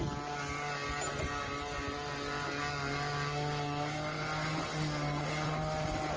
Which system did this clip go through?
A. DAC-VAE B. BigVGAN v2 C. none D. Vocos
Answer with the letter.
C